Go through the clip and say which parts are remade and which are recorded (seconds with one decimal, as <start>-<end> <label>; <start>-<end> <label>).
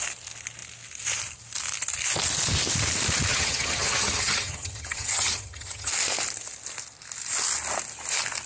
0.0-3.3 recorded; 3.3-5.9 remade; 5.9-8.5 recorded